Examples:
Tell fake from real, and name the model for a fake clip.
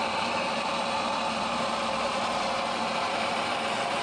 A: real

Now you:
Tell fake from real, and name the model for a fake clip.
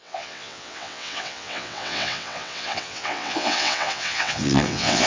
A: fake, vocoder, WaveNeXt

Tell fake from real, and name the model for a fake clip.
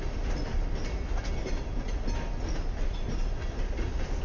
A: real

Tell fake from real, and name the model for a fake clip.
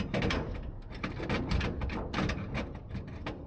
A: real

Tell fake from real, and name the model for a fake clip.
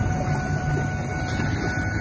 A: real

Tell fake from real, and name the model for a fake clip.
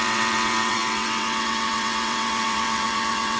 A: fake, vocoder, WaveNeXt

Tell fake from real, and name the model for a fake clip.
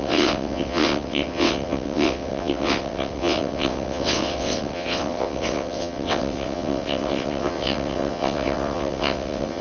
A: fake, vocoder, WaveNeXt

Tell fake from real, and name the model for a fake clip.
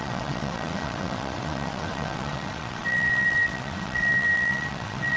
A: fake, vocoder, WaveNeXt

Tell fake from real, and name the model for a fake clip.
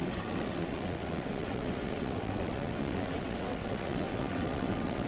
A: fake, vocoder, WaveNeXt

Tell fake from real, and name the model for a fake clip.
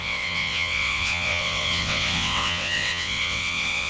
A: fake, vocoder, WaveNeXt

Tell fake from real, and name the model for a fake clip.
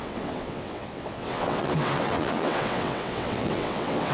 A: fake, vocoder, WaveNeXt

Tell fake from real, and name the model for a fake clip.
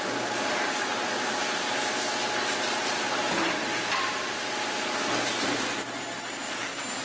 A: real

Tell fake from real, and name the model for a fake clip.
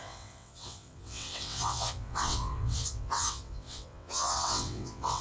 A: fake, vocoder, WaveNeXt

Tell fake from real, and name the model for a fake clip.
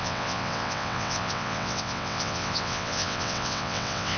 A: fake, vocoder, WaveNeXt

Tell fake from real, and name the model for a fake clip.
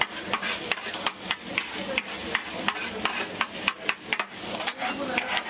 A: real